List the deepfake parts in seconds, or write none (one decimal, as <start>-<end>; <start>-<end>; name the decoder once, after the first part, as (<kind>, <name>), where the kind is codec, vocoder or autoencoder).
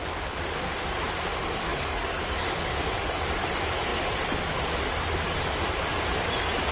1.7-3.4 (codec, DAC)